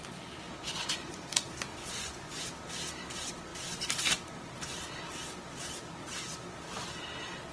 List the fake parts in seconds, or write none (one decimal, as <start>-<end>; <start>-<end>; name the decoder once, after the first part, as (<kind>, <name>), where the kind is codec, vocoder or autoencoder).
0.6-1.2 (vocoder, Vocos); 1.7-2.4